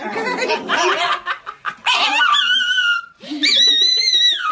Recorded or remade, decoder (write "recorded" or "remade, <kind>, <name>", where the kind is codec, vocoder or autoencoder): recorded